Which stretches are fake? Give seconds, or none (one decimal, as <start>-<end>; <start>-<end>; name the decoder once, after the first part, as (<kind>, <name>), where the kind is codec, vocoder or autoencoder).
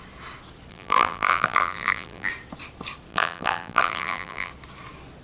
0.7-2.3 (vocoder, BigVGAN v2); 3.1-4.5